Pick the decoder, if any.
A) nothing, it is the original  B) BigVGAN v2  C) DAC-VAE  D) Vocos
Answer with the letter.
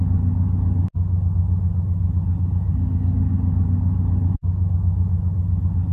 A